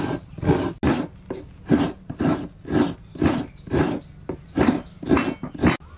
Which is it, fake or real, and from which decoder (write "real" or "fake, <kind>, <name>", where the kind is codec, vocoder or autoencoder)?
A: real